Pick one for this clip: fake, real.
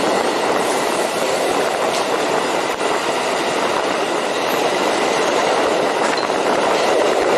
fake